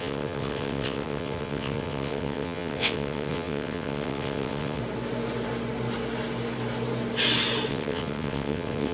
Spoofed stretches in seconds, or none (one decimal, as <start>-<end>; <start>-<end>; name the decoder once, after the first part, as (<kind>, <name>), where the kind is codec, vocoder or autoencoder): 0.0-4.8 (vocoder, WaveNeXt); 7.7-8.9